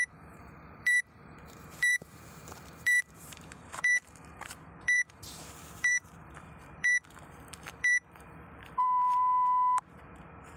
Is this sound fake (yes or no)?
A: yes